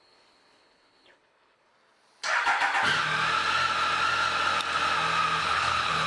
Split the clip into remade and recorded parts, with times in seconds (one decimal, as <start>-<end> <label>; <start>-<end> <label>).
0.0-1.7 remade; 1.7-5.4 recorded; 5.4-6.1 remade